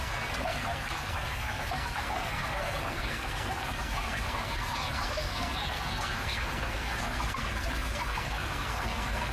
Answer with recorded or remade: remade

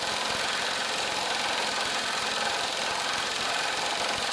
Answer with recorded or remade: recorded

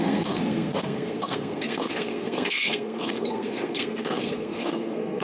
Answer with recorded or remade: remade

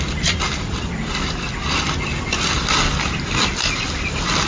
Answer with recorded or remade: recorded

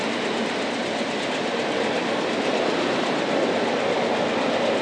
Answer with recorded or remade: recorded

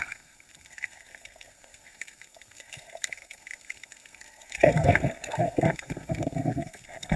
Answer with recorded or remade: remade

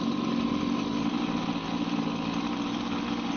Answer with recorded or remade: recorded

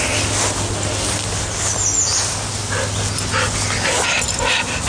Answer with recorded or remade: recorded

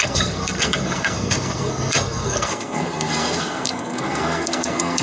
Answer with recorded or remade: remade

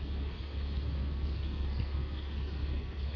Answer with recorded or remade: remade